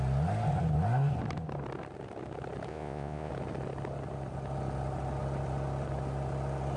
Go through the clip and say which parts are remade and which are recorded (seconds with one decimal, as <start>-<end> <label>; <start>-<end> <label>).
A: 0.0-2.7 recorded; 2.7-3.3 remade; 3.3-6.8 recorded